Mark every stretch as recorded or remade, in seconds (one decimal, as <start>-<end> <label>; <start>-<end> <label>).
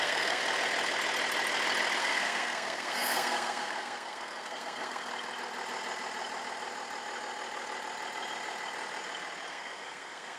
0.0-0.4 remade; 0.4-2.0 recorded; 2.0-5.1 remade; 5.1-9.5 recorded; 9.5-10.4 remade